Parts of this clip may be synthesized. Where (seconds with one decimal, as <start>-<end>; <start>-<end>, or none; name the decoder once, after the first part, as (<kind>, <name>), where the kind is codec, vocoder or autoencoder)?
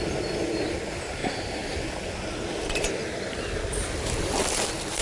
0.0-1.2 (vocoder, BigVGAN v2); 4.2-5.0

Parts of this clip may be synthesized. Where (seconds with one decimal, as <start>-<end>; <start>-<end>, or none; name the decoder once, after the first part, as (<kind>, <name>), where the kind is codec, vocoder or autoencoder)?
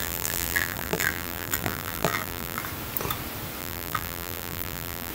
0.0-2.6 (vocoder, BigVGAN v2); 3.6-5.1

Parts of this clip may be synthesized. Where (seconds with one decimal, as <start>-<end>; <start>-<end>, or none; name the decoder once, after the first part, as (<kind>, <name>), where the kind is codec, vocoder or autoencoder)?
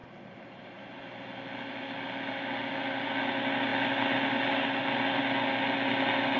0.0-1.0 (vocoder, BigVGAN v2)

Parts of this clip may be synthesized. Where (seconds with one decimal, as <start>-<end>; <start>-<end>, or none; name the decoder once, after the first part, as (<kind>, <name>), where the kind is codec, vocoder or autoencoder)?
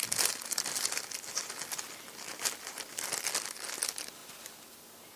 none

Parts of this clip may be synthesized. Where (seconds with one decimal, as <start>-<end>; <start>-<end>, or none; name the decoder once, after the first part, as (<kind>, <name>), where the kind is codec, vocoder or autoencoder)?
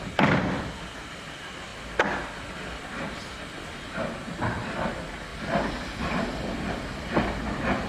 5.3-6.7 (vocoder, BigVGAN v2)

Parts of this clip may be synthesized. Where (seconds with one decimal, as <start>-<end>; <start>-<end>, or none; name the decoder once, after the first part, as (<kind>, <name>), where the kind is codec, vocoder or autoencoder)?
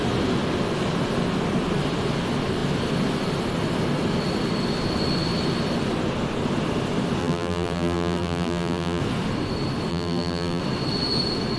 7.2-9.0 (vocoder, BigVGAN v2); 9.9-10.6